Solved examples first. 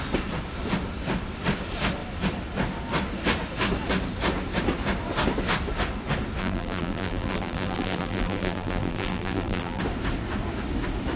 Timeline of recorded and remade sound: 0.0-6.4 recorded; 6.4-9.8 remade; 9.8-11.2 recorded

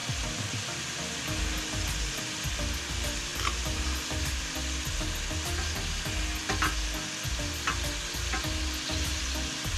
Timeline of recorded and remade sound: 0.0-8.9 recorded; 8.9-9.8 remade